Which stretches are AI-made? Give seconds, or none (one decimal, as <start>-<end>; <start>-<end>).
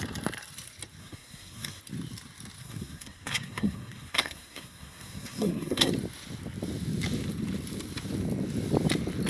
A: 1.0-1.8; 2.6-5.9